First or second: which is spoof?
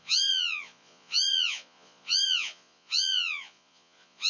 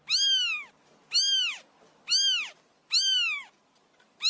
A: first